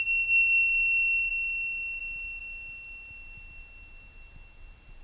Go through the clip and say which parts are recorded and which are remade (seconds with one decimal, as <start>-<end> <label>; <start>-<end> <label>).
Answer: 0.0-5.0 recorded